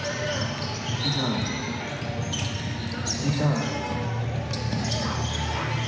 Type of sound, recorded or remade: recorded